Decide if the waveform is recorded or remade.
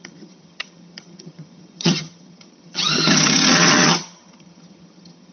remade